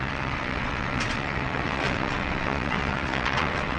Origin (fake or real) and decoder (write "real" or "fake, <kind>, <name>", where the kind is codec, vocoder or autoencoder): fake, vocoder, WaveNeXt